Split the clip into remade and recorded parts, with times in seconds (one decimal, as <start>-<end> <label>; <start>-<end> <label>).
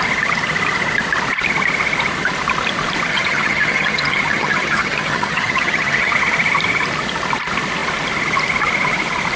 0.0-3.1 recorded; 3.1-6.1 remade; 6.1-9.4 recorded